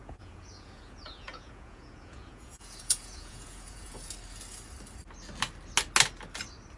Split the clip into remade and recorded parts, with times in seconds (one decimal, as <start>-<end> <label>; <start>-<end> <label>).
0.0-4.1 remade; 4.1-6.8 recorded